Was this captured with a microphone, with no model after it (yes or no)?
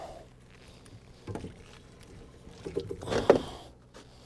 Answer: yes